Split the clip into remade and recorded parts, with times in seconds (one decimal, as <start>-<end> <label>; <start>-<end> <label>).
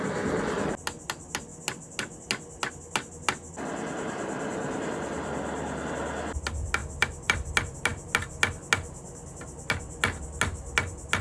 0.0-6.8 recorded; 6.8-7.5 remade; 7.5-11.2 recorded